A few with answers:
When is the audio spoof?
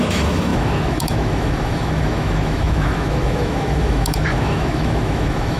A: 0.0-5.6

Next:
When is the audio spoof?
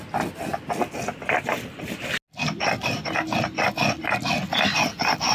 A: none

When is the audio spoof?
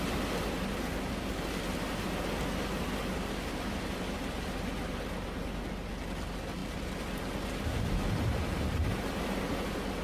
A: none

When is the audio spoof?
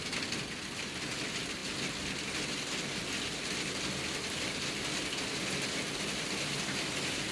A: none